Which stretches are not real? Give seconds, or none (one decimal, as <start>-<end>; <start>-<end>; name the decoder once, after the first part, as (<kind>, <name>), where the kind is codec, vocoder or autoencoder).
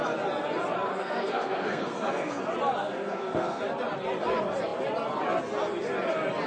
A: 0.9-2.4 (codec, SNAC); 2.8-3.6